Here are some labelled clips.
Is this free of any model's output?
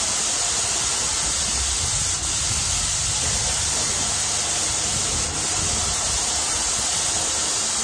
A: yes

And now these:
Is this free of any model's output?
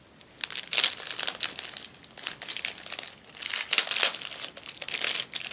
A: yes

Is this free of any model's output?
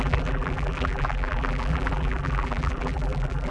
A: no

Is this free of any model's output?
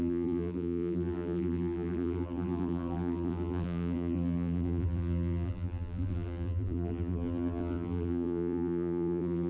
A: no